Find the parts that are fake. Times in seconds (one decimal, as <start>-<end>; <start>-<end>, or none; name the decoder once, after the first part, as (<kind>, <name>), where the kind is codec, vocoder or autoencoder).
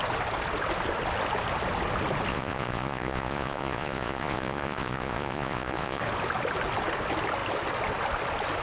2.3-6.0 (vocoder, Vocos)